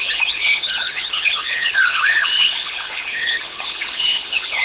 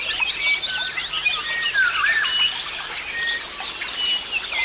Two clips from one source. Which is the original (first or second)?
second